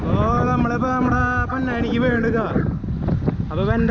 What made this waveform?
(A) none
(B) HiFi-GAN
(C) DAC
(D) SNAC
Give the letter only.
A